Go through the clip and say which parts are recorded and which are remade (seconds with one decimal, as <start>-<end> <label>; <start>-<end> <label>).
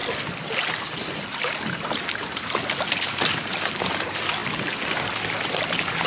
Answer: 0.0-6.1 recorded